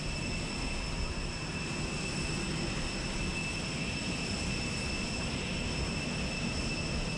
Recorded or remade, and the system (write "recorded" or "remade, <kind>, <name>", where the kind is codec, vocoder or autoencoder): recorded